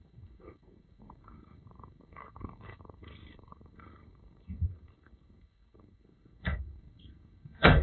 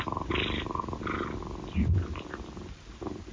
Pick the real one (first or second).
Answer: second